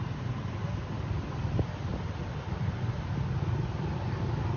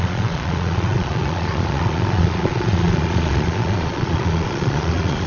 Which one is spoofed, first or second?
second